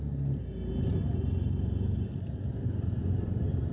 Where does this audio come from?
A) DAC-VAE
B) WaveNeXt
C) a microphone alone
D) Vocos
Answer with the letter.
C